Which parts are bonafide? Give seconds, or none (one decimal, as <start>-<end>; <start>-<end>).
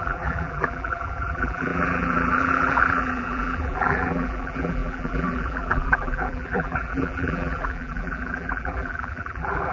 none